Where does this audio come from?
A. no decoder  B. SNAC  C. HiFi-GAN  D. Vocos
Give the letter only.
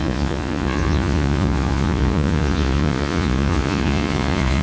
D